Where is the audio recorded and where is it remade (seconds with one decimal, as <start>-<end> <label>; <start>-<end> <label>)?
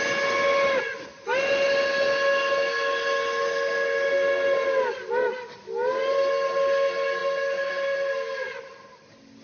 0.0-9.4 recorded